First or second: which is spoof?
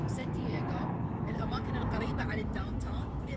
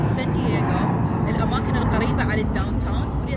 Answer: first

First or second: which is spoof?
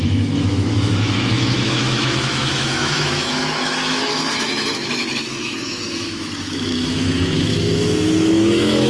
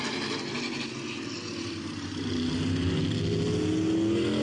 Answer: first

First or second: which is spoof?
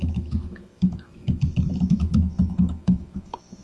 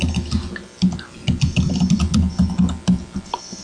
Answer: first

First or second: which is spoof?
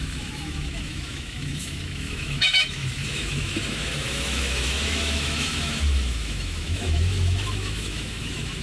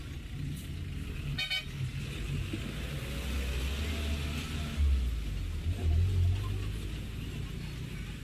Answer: first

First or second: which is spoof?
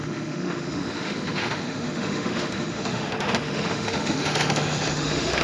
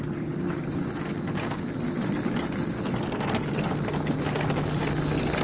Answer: first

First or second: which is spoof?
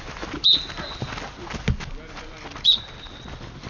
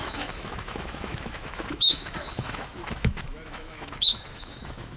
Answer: second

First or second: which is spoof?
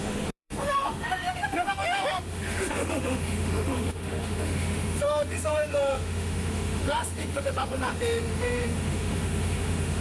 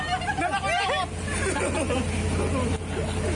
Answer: first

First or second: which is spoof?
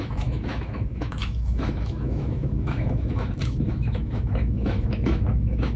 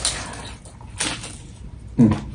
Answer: first